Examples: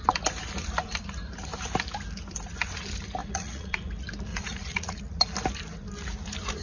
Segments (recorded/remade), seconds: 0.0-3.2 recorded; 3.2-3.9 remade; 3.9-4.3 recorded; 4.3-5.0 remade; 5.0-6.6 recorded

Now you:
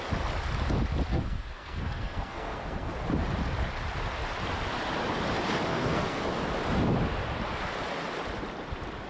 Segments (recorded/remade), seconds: 0.0-1.1 recorded; 1.1-2.9 remade; 2.9-5.7 recorded; 5.7-6.2 remade; 6.2-9.1 recorded

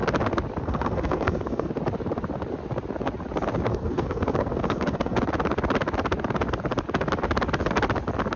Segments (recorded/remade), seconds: 0.0-0.6 recorded; 0.6-1.7 remade; 1.7-3.7 recorded; 3.7-5.2 remade; 5.2-8.4 recorded

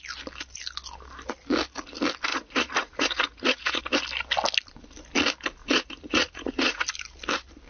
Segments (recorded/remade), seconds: 0.0-2.3 recorded; 2.3-3.8 remade; 3.8-5.6 recorded; 5.6-6.8 remade; 6.8-7.7 recorded

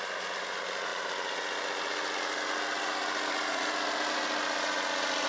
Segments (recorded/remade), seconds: 0.0-5.3 recorded

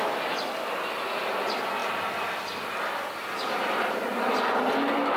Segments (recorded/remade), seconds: 0.0-5.2 recorded

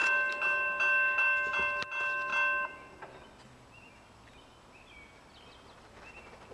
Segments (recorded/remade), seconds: 0.0-6.5 recorded